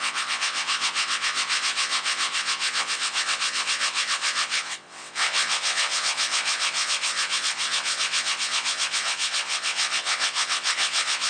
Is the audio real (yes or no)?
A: no